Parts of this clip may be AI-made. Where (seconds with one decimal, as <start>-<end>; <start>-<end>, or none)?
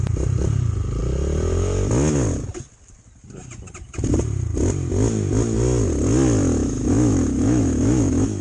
6.6-8.4